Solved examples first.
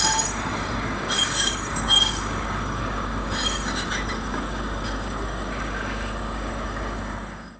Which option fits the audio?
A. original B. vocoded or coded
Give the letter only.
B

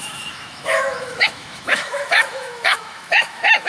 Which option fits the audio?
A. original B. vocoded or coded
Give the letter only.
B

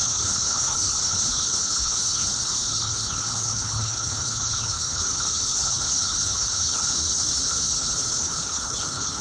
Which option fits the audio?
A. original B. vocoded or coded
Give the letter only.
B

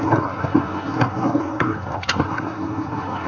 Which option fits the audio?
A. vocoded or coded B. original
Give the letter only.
A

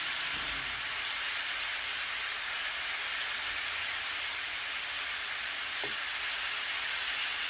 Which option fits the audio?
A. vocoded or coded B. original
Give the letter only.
B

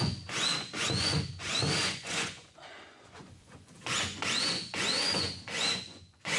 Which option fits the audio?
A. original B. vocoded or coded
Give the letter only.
B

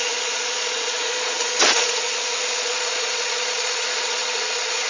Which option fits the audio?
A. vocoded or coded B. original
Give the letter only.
A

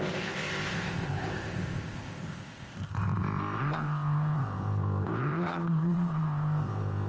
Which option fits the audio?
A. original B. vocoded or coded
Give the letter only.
B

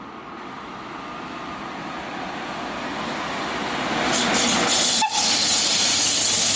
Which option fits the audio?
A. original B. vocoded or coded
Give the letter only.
A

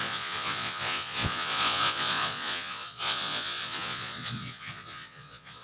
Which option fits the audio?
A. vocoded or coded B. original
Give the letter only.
A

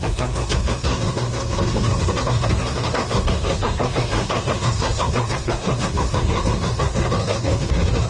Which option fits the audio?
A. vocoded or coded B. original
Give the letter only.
A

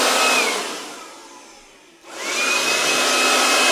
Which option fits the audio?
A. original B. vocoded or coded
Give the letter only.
A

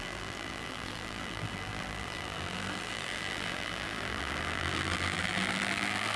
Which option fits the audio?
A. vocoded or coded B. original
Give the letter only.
A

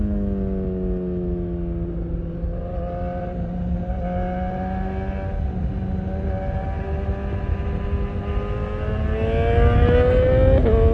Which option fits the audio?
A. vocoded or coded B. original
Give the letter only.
B